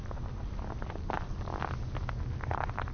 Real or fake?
real